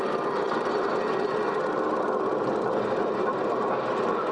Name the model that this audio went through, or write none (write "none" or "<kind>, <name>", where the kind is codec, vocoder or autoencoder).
none